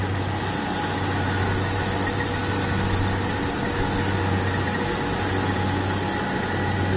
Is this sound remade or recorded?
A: recorded